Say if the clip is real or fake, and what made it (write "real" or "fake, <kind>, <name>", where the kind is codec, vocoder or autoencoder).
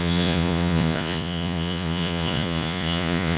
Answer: fake, vocoder, Vocos